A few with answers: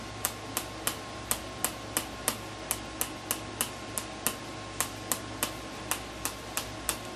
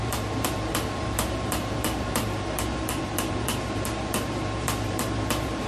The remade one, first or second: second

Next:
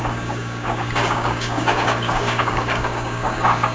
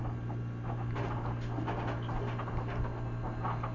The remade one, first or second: first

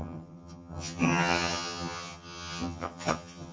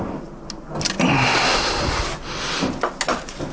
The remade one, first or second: first